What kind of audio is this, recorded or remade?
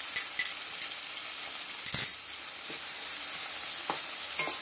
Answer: recorded